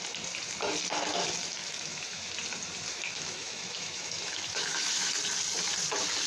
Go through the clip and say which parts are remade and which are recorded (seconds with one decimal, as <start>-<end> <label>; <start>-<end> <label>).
0.0-1.6 recorded; 1.6-2.3 remade; 2.3-2.9 recorded; 2.9-5.1 remade; 5.1-6.3 recorded

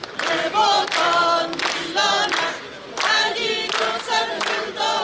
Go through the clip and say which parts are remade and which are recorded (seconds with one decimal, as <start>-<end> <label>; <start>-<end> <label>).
0.0-5.0 recorded

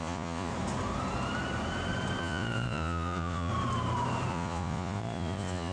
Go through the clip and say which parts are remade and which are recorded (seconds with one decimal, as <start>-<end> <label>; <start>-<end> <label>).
0.0-0.5 remade; 0.5-2.2 recorded; 2.2-3.5 remade; 3.5-4.3 recorded; 4.3-5.7 remade